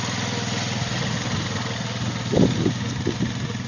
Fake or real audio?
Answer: real